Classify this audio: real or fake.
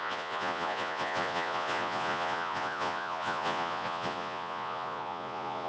fake